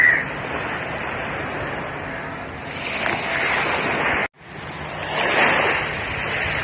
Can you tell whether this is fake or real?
real